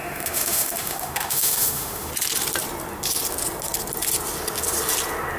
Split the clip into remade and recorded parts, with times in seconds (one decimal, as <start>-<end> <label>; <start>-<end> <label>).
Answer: 0.0-2.1 remade; 2.1-5.4 recorded